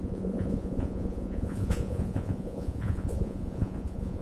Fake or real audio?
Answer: fake